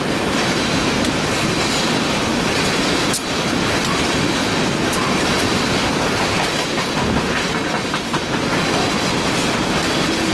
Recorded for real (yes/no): yes